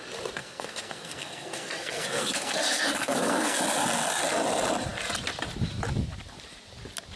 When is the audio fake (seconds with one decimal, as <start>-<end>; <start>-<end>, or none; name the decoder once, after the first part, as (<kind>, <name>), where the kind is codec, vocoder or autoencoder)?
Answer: 0.4-3.6 (codec, SNAC)